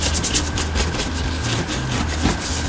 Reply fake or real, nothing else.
real